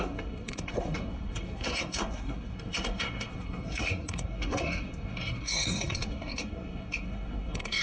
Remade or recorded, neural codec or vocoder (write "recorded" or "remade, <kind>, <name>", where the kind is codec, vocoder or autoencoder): remade, codec, SNAC